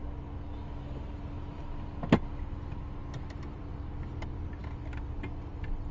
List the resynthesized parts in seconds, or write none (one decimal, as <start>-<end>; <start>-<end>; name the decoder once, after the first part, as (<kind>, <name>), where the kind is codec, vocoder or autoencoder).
none